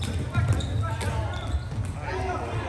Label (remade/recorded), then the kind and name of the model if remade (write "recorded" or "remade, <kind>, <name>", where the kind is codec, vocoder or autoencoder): recorded